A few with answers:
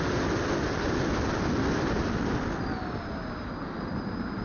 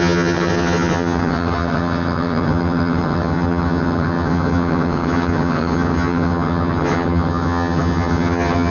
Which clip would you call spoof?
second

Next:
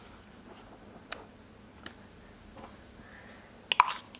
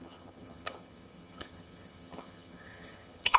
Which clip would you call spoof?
second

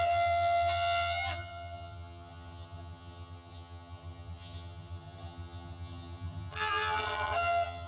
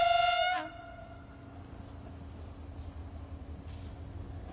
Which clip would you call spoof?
first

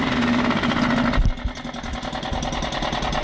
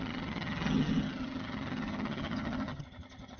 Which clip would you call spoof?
second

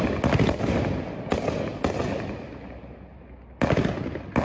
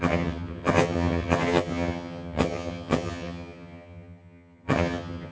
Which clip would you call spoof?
second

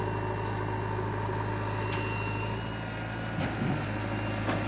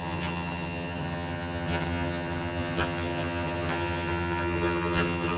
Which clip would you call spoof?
second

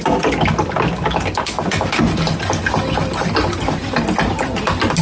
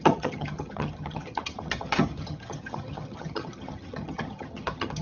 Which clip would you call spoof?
second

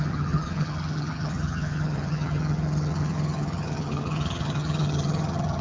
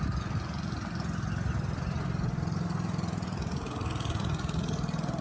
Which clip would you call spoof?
first